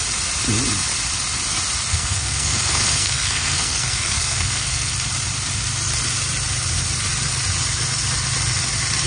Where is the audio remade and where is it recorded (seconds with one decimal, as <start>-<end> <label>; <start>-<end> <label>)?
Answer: 0.0-1.9 recorded; 1.9-4.9 remade; 4.9-9.1 recorded